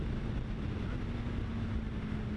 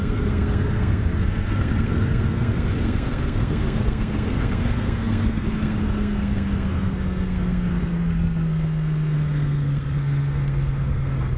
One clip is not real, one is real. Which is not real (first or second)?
second